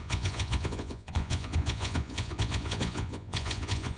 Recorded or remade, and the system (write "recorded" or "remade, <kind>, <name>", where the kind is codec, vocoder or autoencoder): remade, vocoder, Vocos